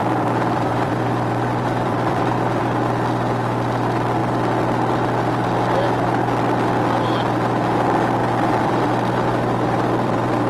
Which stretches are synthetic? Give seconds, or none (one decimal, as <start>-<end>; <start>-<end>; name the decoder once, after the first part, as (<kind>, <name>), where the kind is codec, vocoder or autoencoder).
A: 0.0-2.6 (vocoder, BigVGAN v2); 8.2-10.5